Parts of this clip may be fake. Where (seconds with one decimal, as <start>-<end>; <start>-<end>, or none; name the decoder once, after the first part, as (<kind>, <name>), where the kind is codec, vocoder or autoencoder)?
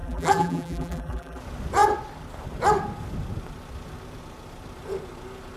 0.0-1.4 (vocoder, BigVGAN v2)